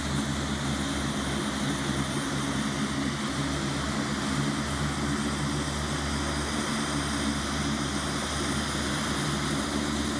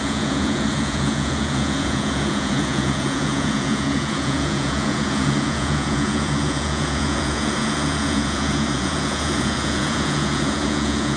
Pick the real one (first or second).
first